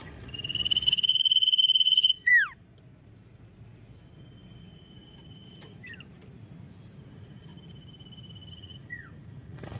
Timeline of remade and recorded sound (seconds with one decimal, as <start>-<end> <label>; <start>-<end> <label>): 0.0-2.3 remade; 2.3-7.1 recorded; 7.1-7.5 remade; 7.5-8.5 recorded; 8.5-9.8 remade